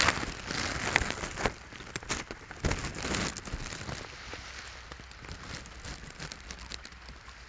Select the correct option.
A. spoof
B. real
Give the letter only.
B